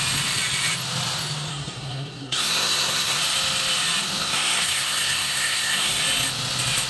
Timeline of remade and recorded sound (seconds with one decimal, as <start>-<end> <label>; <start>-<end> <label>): 0.0-1.5 recorded; 1.5-3.2 remade; 3.2-4.2 recorded; 4.2-6.0 remade; 6.0-6.9 recorded